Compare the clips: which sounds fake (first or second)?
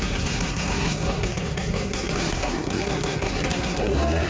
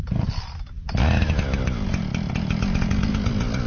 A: first